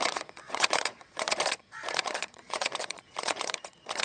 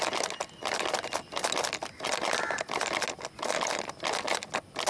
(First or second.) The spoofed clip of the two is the first